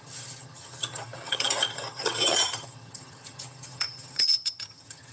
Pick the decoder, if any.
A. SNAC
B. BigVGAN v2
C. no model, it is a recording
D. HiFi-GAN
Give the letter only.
D